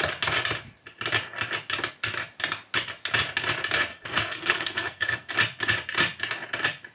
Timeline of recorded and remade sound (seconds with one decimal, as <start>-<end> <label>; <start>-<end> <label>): 0.0-3.9 recorded; 3.9-5.3 remade; 5.3-6.9 recorded